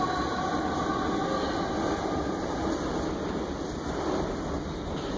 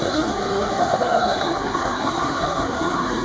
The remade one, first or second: second